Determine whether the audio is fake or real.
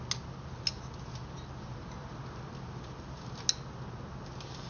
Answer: real